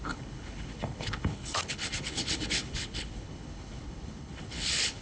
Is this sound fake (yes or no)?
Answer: yes